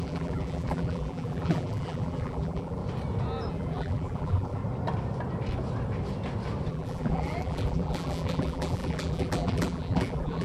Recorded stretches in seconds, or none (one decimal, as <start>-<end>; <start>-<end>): 2.8-3.5; 4.6-6.7